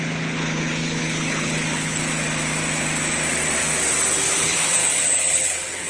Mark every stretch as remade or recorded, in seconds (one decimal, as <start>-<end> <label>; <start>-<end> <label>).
0.0-2.0 remade; 2.0-4.2 recorded; 4.2-5.9 remade